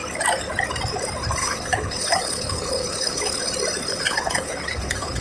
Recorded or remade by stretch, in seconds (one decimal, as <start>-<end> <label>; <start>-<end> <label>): 0.0-1.4 recorded; 1.4-3.4 remade; 3.4-3.9 recorded; 3.9-5.2 remade